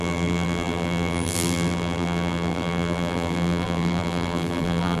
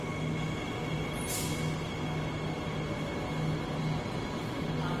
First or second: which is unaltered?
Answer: second